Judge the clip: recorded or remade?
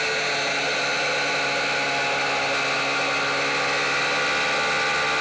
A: recorded